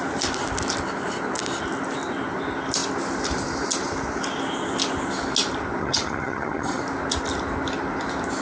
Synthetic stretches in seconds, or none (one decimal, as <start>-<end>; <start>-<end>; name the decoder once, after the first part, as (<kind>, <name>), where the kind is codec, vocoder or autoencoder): 5.8-6.8 (vocoder, HiFi-GAN)

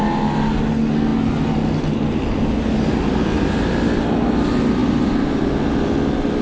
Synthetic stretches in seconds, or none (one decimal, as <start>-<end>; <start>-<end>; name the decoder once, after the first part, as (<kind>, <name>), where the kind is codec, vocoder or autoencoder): none

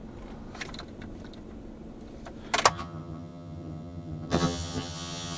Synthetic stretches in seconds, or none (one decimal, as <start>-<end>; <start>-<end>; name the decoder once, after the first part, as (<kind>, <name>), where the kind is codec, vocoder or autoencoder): 2.7-5.4 (vocoder, HiFi-GAN)